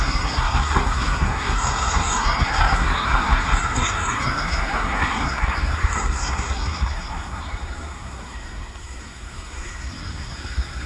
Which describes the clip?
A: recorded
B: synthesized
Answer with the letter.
B